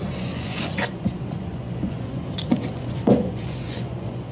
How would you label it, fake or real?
fake